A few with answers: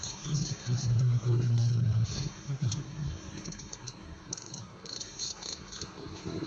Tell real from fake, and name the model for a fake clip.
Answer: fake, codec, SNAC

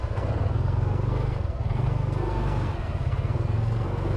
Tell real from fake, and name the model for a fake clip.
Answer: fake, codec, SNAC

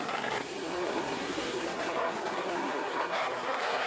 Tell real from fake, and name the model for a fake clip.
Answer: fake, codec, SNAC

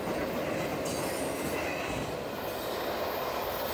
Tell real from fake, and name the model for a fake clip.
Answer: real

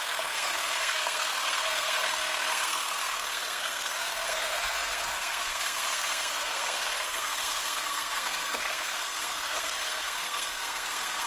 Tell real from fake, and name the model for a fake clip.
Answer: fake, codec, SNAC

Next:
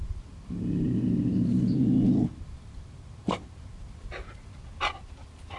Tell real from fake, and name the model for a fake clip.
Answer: real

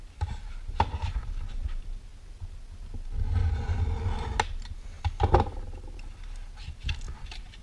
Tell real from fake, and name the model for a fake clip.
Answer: real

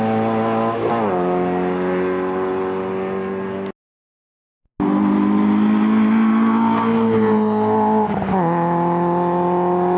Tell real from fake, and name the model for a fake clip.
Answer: real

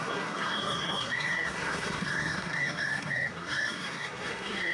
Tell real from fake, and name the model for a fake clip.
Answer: fake, codec, SNAC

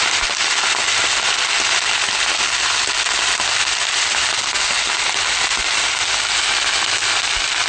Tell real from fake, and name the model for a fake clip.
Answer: real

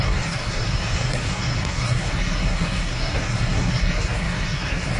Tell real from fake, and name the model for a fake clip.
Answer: fake, codec, SNAC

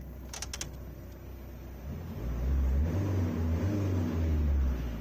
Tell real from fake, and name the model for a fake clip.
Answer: real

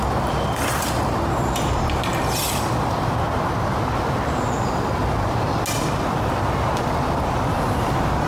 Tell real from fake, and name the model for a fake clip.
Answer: real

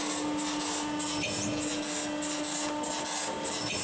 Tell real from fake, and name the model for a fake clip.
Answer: real